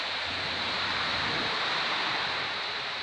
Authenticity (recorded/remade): remade